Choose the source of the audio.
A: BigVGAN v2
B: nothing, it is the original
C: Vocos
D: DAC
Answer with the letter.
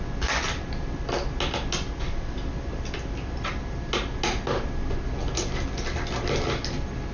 B